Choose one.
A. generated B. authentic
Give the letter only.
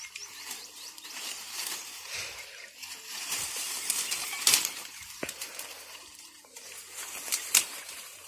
A